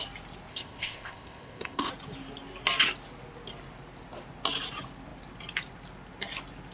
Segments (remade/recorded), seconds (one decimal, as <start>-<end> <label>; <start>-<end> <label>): 0.0-0.5 recorded; 0.5-1.9 remade; 1.9-6.7 recorded